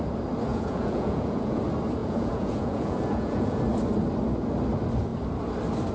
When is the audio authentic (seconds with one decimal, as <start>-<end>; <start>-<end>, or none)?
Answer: 0.0-0.5; 1.6-2.0; 3.6-5.9